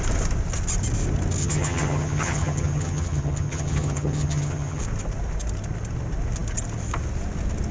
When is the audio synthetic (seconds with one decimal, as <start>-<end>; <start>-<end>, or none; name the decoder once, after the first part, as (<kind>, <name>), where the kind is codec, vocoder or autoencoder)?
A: 1.4-4.8 (vocoder, HiFi-GAN)